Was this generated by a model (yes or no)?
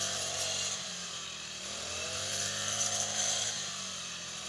yes